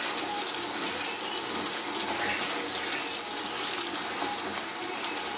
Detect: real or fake real